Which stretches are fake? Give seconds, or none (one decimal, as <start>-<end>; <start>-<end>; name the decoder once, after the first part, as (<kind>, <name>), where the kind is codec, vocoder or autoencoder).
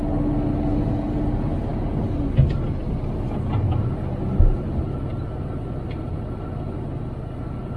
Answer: none